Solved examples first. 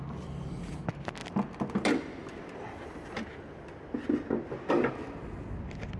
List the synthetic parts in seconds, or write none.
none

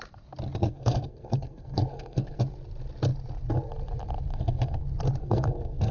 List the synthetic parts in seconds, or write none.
0.6-2.4 (codec, SNAC); 4.3-4.8; 5.2-5.9

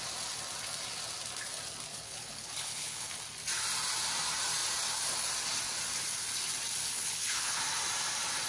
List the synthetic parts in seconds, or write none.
1.9-3.1 (codec, HILCodec); 6.8-7.6

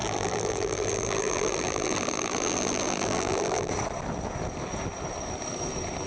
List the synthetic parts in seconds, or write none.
0.0-3.7 (vocoder, BigVGAN v2)

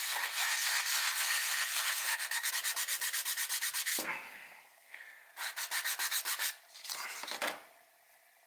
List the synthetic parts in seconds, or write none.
0.0-2.5 (codec, SNAC); 3.9-5.3

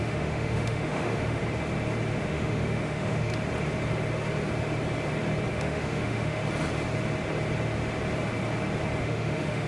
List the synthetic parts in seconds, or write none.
0.0-1.4 (autoencoder, DAC-VAE); 2.2-3.3; 5.5-6.4; 9.0-9.7

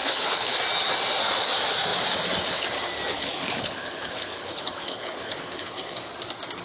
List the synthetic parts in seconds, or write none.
0.0-0.6 (codec, HILCodec); 3.1-6.0

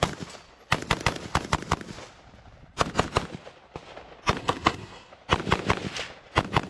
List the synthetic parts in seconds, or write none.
4.4-5.1 (codec, SNAC)